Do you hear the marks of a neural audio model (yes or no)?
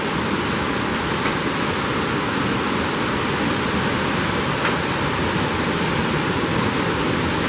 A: no